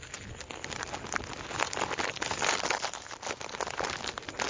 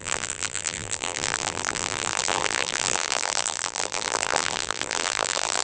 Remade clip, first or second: second